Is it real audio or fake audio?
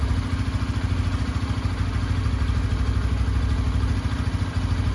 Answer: real